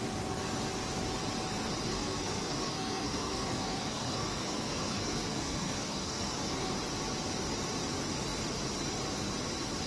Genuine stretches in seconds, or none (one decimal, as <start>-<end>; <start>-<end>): 0.0-1.9; 6.7-9.9